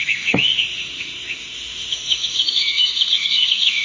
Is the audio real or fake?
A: fake